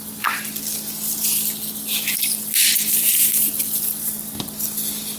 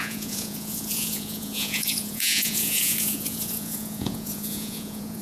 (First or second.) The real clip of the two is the first